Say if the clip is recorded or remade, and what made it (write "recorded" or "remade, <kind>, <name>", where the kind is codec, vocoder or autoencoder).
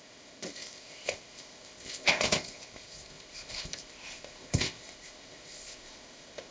remade, codec, ZipCodec